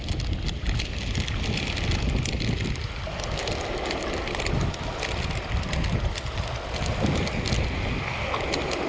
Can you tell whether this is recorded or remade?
recorded